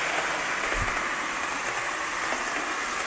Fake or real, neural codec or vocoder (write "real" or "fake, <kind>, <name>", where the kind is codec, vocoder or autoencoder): real